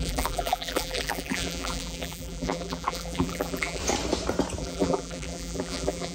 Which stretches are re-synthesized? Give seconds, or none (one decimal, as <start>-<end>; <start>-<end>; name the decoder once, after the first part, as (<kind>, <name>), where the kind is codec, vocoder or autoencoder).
0.0-3.8 (vocoder, BigVGAN v2); 4.6-6.1